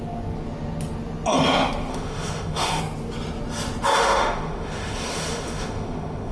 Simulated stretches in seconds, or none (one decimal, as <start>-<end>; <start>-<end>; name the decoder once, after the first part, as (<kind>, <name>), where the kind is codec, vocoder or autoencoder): 1.9-2.8 (autoencoder, DAC-VAE); 3.9-6.3